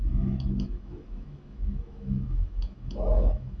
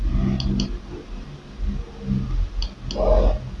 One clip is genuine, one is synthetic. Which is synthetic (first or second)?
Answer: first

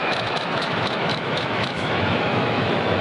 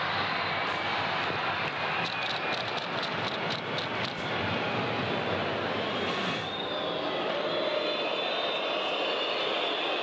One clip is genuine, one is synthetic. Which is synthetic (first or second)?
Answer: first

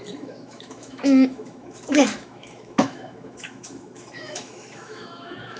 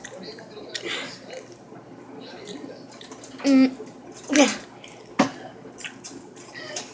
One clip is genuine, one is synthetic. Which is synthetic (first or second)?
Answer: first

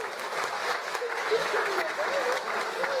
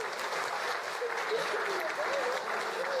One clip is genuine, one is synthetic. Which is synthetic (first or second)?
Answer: first